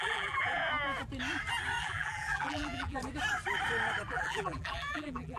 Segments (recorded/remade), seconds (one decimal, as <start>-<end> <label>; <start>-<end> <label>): 0.0-0.6 remade; 0.6-1.8 recorded; 1.8-3.0 remade; 3.0-4.1 recorded; 4.1-5.4 remade